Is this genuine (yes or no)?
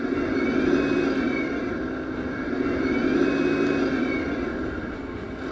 yes